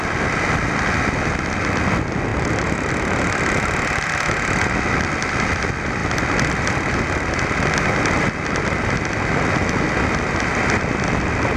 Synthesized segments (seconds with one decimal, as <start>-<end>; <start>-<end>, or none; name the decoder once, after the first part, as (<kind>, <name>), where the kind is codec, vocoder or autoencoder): 2.3-2.9 (vocoder, BigVGAN v2)